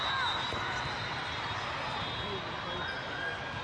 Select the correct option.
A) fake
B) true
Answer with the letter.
B